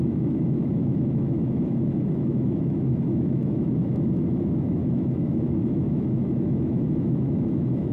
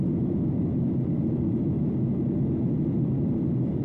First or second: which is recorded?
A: second